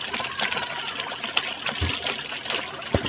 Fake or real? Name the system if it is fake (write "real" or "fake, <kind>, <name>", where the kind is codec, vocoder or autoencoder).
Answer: real